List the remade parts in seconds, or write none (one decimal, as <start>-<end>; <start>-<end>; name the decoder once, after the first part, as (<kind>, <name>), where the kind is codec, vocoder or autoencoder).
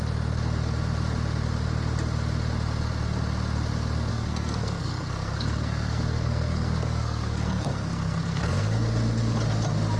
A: 4.1-8.8 (codec, SNAC)